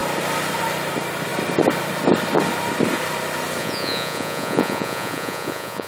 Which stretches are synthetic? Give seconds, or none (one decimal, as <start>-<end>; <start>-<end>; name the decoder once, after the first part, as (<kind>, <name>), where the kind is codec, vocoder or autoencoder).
3.6-5.9 (vocoder, Vocos)